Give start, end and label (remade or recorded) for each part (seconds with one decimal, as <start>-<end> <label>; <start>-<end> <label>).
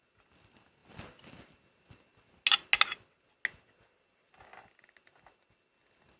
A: 0.0-6.2 recorded